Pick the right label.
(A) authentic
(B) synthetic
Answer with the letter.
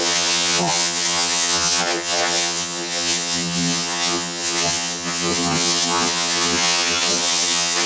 B